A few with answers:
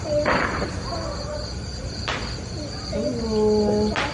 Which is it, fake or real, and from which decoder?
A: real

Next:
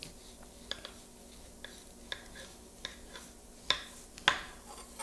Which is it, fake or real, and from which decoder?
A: real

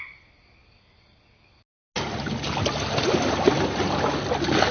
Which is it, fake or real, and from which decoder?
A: real